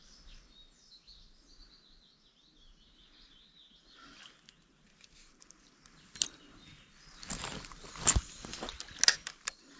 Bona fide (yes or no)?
yes